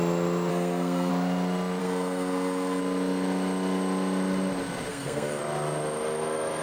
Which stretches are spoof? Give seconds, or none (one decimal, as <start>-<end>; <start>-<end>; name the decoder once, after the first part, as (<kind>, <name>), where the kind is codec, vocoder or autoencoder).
0.5-1.1 (codec, SNAC); 1.8-2.8; 4.9-5.4